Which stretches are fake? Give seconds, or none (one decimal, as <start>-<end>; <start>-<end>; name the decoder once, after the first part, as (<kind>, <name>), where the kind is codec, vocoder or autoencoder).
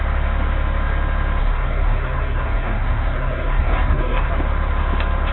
1.4-4.3 (codec, SNAC)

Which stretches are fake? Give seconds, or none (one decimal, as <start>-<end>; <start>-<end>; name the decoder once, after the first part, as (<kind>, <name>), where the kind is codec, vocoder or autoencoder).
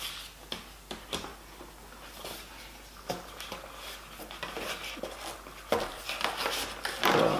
none